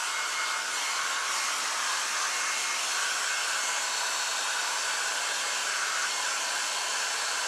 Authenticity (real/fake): real